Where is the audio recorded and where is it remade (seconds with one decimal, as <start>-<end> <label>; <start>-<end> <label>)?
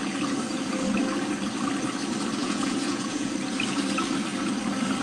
0.0-2.4 recorded; 2.4-3.3 remade; 3.3-5.0 recorded